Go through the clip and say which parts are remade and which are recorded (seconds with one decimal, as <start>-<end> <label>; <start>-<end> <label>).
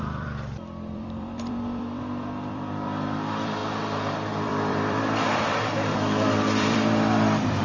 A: 0.0-3.6 remade; 3.6-4.3 recorded; 4.3-7.6 remade